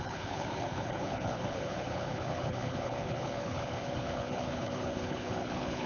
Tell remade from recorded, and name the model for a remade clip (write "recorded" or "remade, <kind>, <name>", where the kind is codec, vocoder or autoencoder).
remade, codec, HILCodec